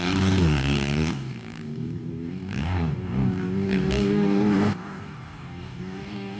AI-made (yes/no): yes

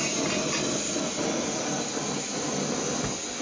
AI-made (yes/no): no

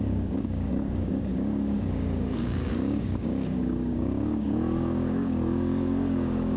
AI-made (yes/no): yes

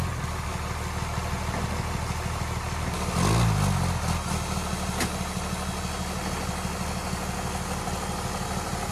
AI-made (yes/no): no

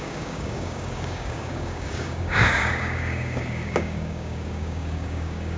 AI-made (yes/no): yes